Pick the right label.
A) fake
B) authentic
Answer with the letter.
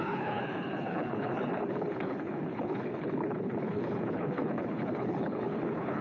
A